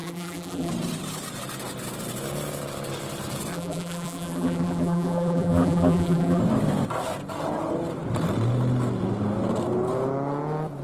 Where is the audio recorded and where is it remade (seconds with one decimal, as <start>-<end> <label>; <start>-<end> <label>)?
0.0-0.7 remade; 0.7-3.5 recorded; 3.5-6.4 remade; 6.4-10.8 recorded